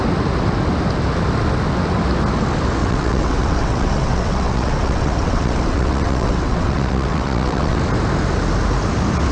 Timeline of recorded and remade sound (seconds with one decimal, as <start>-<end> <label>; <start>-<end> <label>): 0.0-2.8 recorded; 2.8-7.8 remade; 7.8-9.3 recorded